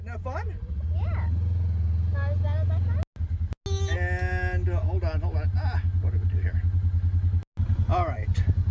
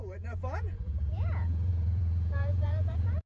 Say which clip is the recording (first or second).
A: first